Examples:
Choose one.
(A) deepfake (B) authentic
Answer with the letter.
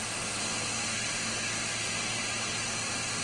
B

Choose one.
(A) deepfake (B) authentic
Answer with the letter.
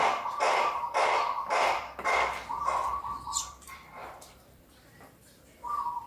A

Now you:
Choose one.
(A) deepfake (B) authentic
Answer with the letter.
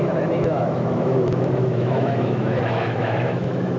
A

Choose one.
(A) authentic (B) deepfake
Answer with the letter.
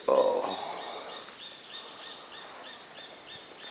A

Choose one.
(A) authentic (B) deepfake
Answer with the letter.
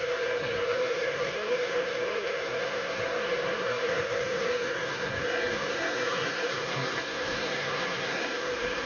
B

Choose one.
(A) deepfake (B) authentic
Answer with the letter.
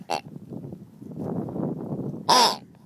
B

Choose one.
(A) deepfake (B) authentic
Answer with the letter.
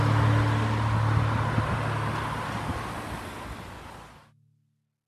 B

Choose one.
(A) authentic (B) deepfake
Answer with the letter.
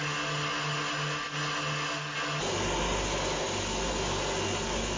A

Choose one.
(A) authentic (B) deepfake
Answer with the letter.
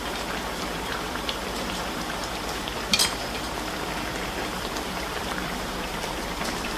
B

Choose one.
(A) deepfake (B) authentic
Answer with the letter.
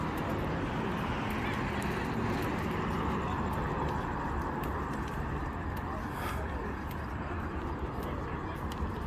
B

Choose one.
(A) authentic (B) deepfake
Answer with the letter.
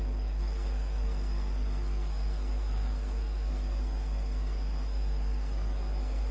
B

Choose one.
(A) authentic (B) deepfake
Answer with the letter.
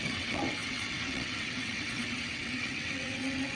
B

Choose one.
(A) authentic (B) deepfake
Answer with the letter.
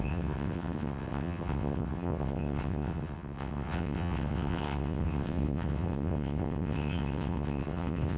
B